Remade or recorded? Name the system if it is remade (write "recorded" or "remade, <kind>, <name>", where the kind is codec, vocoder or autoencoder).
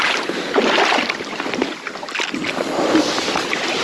recorded